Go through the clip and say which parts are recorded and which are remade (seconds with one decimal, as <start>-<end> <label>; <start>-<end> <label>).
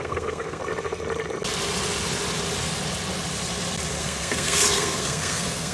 0.0-0.6 remade; 0.6-4.0 recorded; 4.0-5.7 remade